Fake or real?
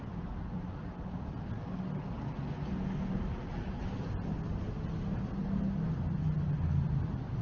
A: real